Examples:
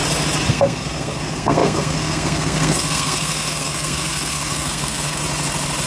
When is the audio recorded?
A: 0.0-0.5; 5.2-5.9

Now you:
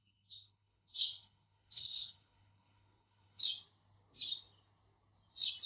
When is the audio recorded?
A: 3.4-5.7